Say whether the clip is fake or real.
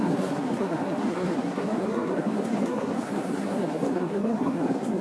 fake